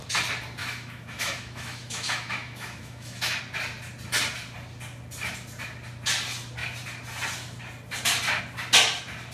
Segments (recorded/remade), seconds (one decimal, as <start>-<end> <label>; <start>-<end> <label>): 0.0-0.6 recorded; 0.6-3.4 remade; 3.4-9.3 recorded